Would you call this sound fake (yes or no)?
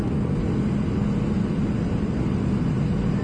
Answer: no